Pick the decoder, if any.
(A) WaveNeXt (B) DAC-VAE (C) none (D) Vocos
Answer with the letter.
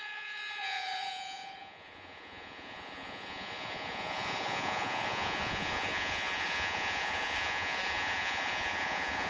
D